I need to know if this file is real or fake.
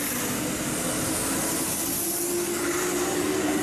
real